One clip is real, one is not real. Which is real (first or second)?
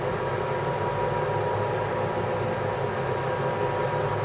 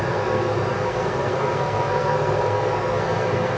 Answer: first